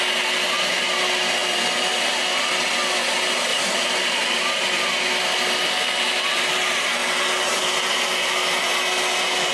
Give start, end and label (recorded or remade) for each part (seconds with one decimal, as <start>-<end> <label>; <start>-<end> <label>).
0.0-1.4 recorded; 1.4-2.1 remade; 2.1-3.5 recorded; 3.5-4.9 remade; 4.9-9.5 recorded